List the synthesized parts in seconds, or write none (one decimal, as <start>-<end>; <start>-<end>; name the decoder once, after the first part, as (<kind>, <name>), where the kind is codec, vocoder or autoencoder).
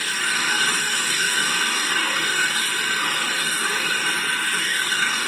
0.0-2.6 (codec, DAC); 3.4-4.0; 4.6-5.3